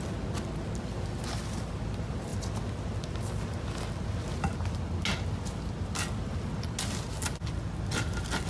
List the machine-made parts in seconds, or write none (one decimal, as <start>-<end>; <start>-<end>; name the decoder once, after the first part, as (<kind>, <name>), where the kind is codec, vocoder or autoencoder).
none